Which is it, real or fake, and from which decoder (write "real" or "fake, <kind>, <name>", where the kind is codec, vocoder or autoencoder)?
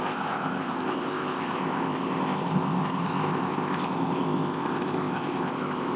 fake, codec, ZipCodec